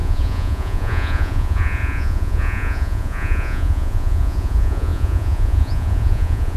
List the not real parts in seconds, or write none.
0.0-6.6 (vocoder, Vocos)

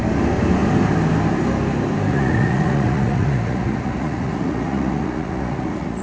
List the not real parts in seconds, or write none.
2.1-6.0 (vocoder, Vocos)

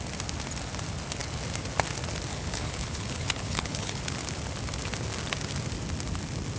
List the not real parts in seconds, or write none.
2.3-4.0 (codec, HILCodec)

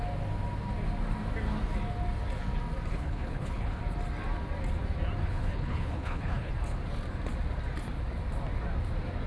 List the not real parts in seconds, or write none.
2.9-3.8 (codec, HILCodec); 5.2-6.5

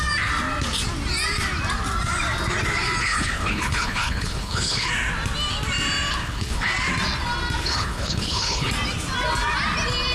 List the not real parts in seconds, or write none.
3.0-4.9 (codec, HILCodec); 6.2-6.7; 7.6-8.7

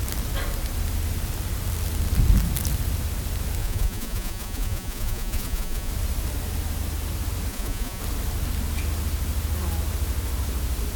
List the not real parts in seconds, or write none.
3.6-5.9 (vocoder, Vocos); 7.5-8.0

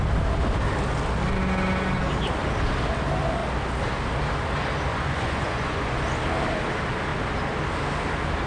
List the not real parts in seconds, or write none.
4.9-6.0 (vocoder, Vocos)

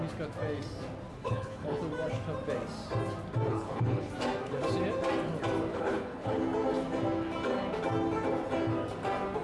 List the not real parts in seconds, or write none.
1.1-1.8 (codec, HILCodec); 3.5-4.1; 5.7-6.4